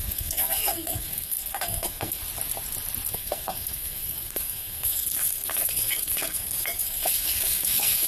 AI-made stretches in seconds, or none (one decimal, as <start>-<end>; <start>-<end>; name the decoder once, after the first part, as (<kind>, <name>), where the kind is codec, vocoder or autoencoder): 0.0-2.2 (codec, SNAC); 3.1-8.1